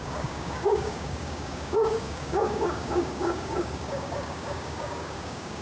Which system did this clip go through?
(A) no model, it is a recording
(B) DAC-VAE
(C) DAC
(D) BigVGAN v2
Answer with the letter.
C